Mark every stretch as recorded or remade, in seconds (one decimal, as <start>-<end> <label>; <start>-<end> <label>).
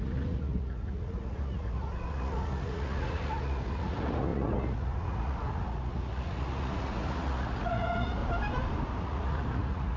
0.0-8.2 remade; 8.2-9.0 recorded; 9.0-10.0 remade